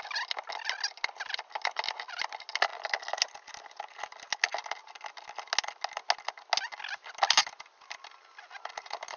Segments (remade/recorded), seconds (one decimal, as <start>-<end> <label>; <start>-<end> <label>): 0.0-9.2 recorded

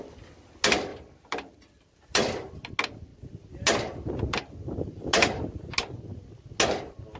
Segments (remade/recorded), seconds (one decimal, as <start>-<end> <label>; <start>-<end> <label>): 0.0-0.9 recorded; 0.9-2.7 remade; 2.7-7.2 recorded

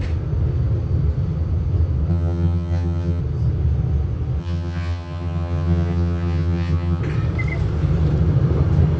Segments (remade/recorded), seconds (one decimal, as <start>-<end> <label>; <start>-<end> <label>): 0.0-2.1 recorded; 2.1-3.2 remade; 3.2-4.4 recorded; 4.4-7.0 remade; 7.0-9.0 recorded

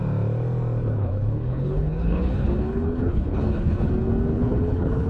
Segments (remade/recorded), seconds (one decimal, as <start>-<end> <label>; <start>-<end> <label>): 0.0-0.8 recorded; 0.8-3.9 remade; 3.9-4.3 recorded; 4.3-5.1 remade

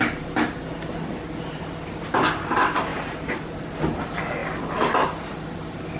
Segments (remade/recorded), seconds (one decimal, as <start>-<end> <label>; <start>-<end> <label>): 0.0-2.9 recorded; 2.9-3.6 remade; 3.6-6.0 recorded

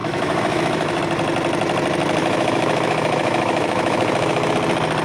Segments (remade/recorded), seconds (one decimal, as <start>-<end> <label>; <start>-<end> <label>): 0.0-1.0 remade; 1.0-2.2 recorded; 2.2-4.5 remade; 4.5-5.0 recorded

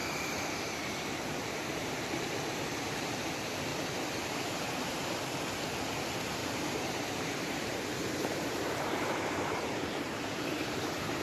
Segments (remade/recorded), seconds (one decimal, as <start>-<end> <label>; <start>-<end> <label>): 0.0-3.3 remade; 3.3-6.4 recorded; 6.4-11.2 remade